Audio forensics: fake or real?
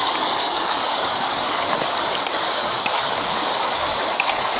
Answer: fake